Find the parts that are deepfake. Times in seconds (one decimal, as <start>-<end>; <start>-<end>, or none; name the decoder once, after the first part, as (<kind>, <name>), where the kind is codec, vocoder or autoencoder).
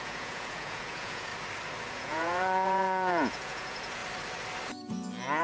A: 0.0-1.3 (vocoder, Vocos); 1.9-4.0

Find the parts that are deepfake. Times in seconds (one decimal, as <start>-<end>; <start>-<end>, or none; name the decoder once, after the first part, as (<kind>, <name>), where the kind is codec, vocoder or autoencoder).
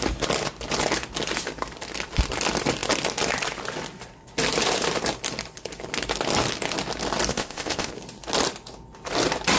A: 7.3-7.9 (codec, ZipCodec)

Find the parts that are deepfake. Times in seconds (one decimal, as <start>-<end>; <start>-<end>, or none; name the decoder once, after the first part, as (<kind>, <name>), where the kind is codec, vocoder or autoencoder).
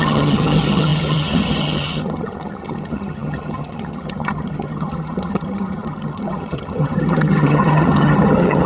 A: 0.0-8.7 (vocoder, HiFi-GAN)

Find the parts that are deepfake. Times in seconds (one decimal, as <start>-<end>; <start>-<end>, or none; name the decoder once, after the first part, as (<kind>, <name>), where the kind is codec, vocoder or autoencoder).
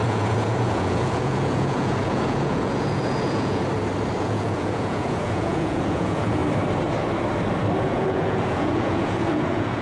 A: 0.0-3.6 (vocoder, Vocos); 4.2-6.4; 7.8-9.8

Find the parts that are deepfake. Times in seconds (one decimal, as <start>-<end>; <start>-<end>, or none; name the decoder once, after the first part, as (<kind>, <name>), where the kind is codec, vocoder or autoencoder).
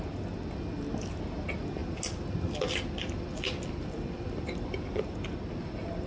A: none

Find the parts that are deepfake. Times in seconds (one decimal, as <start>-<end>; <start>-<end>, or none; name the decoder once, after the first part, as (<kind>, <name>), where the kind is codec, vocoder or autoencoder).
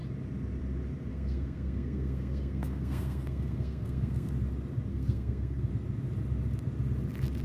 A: 1.1-4.3 (codec, SNAC); 4.9-5.7